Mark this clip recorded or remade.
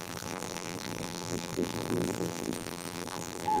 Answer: remade